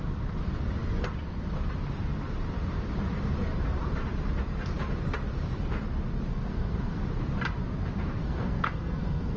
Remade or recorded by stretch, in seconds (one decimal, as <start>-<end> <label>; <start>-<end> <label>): 0.0-6.3 recorded; 6.3-7.0 remade; 7.0-8.2 recorded; 8.2-9.4 remade